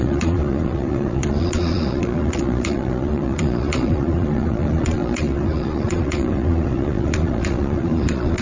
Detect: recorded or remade remade